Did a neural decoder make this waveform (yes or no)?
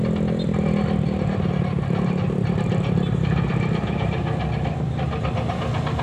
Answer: no